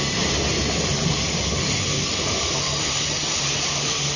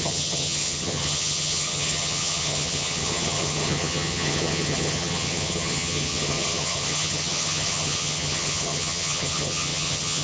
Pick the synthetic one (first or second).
second